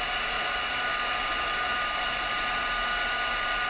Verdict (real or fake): real